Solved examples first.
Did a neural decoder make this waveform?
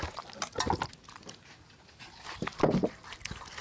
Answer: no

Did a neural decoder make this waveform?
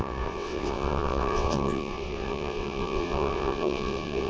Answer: yes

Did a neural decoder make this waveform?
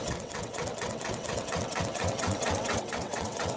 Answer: yes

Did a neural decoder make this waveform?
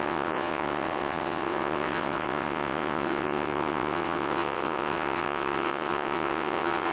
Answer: yes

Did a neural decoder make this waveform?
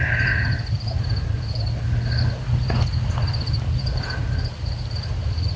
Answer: no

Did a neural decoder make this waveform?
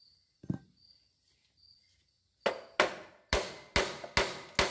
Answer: no